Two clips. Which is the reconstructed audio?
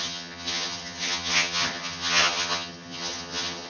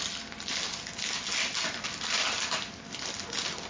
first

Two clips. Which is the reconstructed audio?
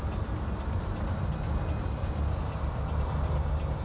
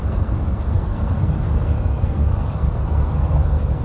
second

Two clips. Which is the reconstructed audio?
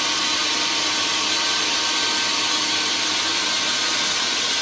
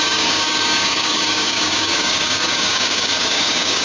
second